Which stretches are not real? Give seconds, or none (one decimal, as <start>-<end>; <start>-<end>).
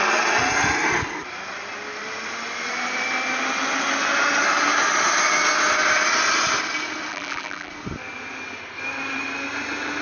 7.1-7.7